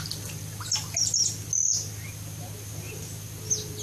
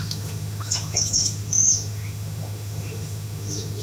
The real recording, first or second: first